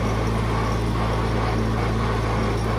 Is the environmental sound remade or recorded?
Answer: recorded